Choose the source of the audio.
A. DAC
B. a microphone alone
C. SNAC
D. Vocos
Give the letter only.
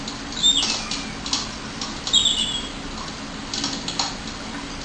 B